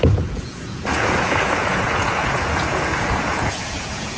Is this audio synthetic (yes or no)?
yes